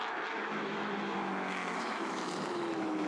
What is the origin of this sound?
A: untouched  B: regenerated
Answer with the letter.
B